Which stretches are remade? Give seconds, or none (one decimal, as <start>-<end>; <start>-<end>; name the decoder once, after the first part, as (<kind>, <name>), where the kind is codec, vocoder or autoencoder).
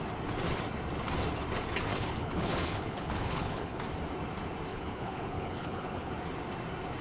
1.9-3.8 (codec, HILCodec); 4.7-6.1